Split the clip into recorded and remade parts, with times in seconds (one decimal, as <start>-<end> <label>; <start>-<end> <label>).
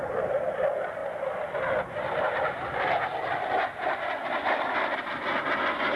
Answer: 0.0-6.0 recorded